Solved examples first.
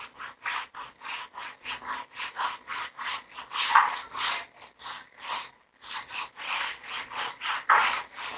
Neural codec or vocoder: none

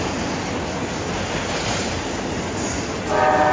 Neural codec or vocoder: none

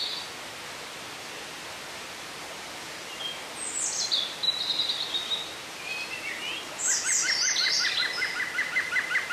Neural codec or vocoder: none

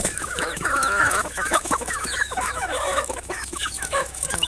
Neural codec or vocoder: autoencoder, DAC-VAE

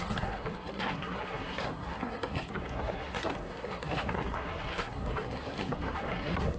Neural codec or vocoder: codec, SNAC